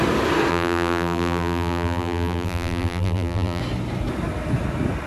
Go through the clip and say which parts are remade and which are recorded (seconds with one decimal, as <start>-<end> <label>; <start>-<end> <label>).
0.0-0.5 recorded; 0.5-3.6 remade; 3.6-5.1 recorded